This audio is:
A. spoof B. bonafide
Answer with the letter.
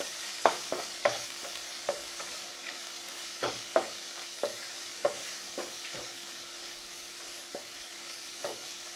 A